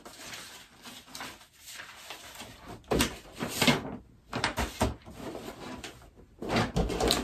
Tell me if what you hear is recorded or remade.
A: recorded